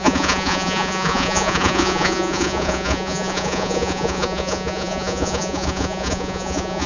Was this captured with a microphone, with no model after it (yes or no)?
no